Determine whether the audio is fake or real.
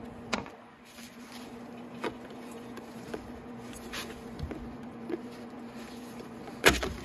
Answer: fake